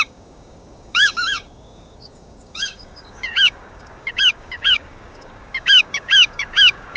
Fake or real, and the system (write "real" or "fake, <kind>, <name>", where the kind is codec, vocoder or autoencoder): fake, codec, DAC